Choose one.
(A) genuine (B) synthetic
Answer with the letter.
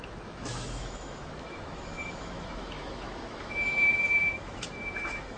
B